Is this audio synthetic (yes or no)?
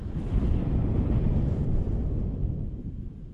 yes